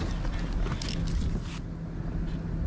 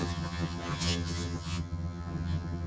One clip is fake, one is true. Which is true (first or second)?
first